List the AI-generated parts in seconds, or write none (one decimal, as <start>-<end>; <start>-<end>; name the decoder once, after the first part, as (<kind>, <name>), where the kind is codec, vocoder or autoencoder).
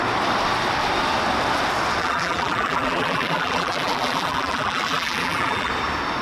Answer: 2.0-5.7 (vocoder, BigVGAN v2)